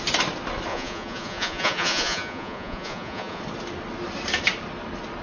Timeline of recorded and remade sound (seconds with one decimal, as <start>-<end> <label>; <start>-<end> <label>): 0.0-0.7 recorded; 0.7-3.4 remade; 3.4-5.2 recorded